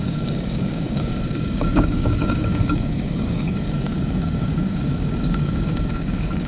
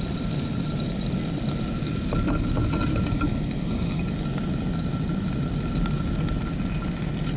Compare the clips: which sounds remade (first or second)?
first